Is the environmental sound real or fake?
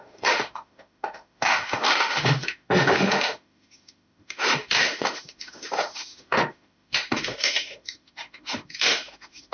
fake